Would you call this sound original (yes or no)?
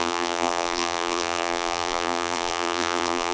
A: no